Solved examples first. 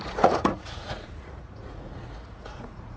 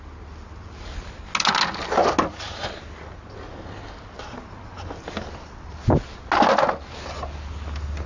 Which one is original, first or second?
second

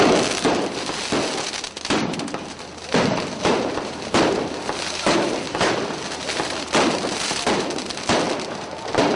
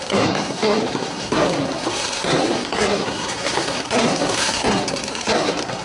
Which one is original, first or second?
first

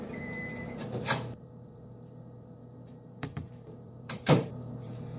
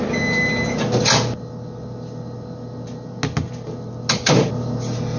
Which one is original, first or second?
second